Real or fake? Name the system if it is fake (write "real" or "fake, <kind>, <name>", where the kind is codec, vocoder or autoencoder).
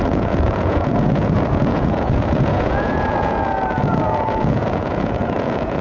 fake, vocoder, Vocos